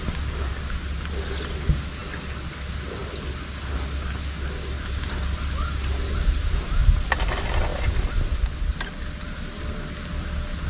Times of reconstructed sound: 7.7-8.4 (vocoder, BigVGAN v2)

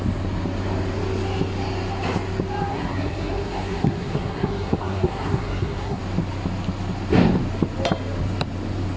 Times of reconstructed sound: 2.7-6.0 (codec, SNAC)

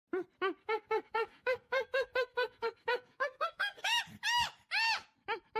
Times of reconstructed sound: 0.6-4.0 (codec, SNAC)